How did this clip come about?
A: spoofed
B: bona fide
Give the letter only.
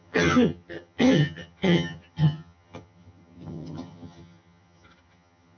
A